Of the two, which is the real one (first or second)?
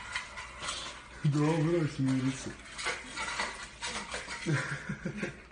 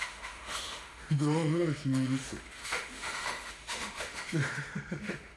first